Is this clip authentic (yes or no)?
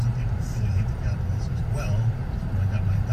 no